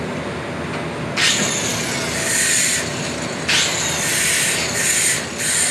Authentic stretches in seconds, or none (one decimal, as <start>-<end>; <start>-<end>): 0.0-5.7